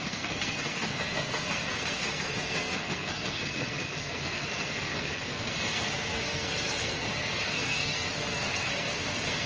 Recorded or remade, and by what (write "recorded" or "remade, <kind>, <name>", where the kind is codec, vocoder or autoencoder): remade, codec, SNAC